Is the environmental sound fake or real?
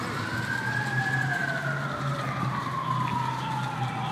real